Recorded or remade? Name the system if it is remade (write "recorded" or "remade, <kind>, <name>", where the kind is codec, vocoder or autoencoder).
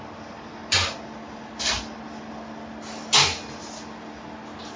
recorded